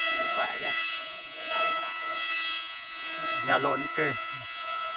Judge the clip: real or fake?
fake